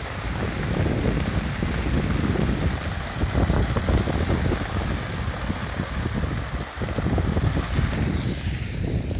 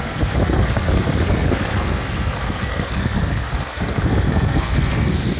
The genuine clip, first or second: first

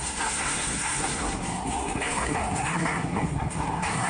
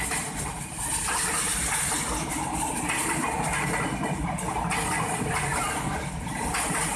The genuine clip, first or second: second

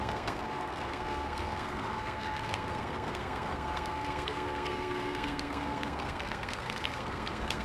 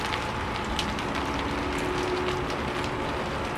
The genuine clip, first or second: second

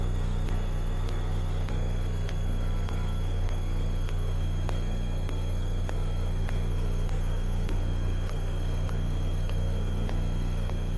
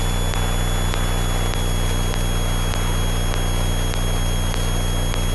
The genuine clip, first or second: second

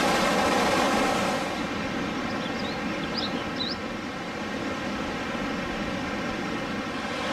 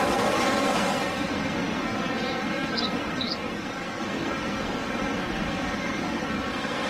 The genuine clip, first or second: first